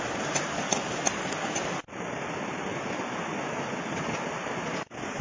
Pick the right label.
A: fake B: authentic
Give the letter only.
B